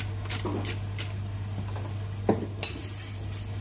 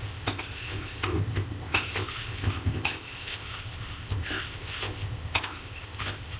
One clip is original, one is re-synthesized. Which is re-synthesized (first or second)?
second